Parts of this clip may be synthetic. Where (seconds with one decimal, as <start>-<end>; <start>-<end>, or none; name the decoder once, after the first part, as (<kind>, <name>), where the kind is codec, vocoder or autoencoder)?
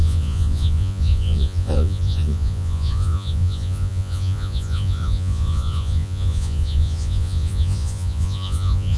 0.0-9.0 (vocoder, Vocos)